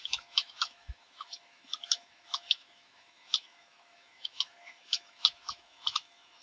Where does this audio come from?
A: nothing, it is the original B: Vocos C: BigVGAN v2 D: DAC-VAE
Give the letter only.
D